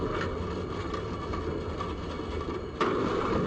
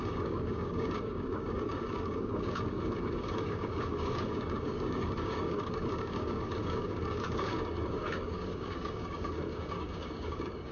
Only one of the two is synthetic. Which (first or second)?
second